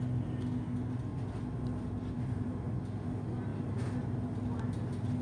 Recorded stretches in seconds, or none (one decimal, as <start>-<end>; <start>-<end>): 0.0-1.1; 2.8-5.2